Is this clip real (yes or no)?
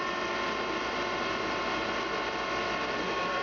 yes